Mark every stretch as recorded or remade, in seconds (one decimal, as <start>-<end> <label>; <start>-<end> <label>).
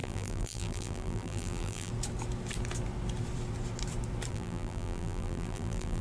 0.0-1.9 remade; 1.9-4.3 recorded; 4.3-6.0 remade